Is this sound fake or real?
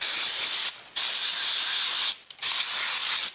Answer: real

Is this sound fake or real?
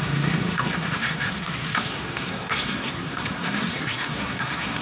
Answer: fake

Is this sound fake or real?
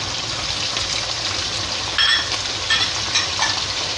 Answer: real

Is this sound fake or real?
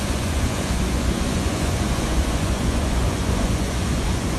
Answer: fake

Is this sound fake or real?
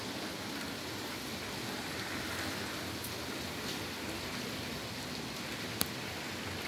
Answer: real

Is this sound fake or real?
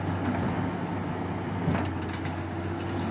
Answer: real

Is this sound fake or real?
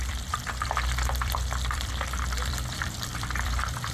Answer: fake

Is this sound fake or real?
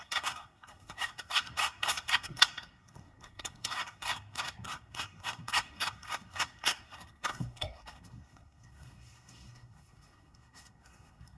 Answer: fake